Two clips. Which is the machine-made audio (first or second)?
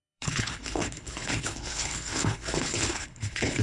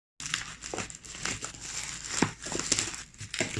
first